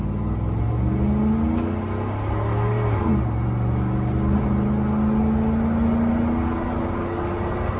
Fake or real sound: real